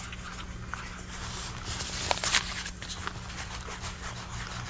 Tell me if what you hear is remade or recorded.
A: recorded